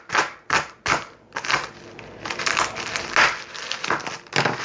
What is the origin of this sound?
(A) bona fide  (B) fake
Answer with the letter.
A